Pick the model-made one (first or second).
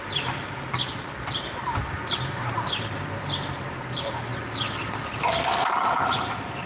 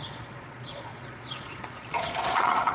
second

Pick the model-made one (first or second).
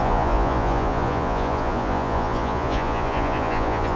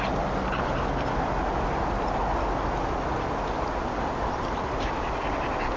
first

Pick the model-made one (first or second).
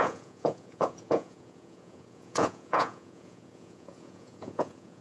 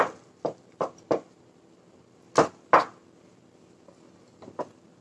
first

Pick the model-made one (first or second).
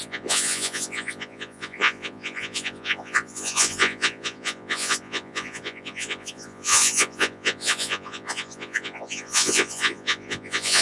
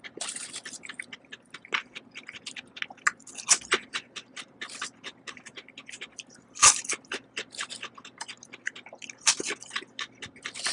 first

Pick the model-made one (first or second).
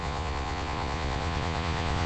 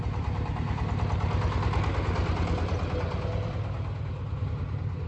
first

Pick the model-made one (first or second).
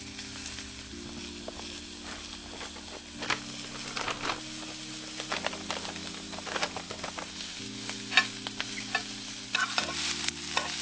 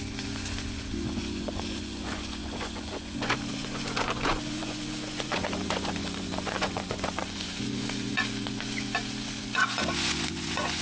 second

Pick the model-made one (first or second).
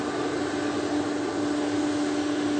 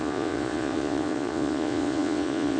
second